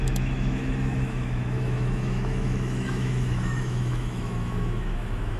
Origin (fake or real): fake